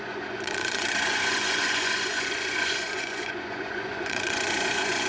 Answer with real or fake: fake